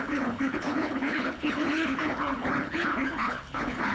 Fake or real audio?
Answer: fake